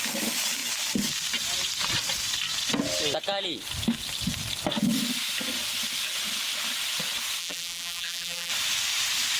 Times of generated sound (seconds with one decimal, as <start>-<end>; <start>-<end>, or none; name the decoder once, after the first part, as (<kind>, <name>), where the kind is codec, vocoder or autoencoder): 7.4-8.5 (vocoder, BigVGAN v2)